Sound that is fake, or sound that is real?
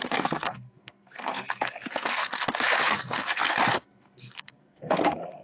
fake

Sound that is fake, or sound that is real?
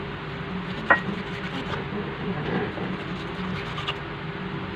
real